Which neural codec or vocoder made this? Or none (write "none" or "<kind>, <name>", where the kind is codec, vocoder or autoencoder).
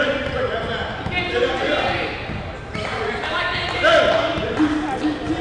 none